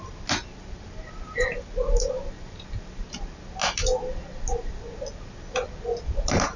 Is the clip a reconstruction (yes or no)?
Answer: no